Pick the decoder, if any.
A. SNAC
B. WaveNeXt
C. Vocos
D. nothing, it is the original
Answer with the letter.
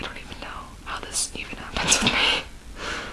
D